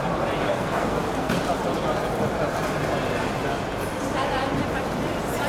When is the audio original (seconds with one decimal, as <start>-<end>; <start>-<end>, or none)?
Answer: 0.0-0.5; 1.4-5.5